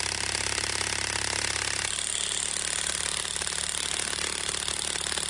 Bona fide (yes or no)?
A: yes